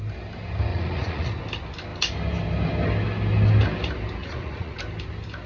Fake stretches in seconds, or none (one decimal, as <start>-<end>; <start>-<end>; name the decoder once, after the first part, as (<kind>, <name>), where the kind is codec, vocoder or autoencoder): 0.7-1.4 (vocoder, Vocos); 4.2-4.8